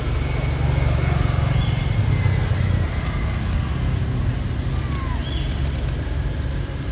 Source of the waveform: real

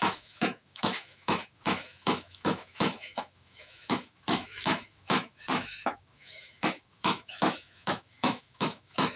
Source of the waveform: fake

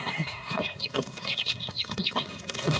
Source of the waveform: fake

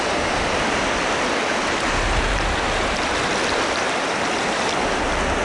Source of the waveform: real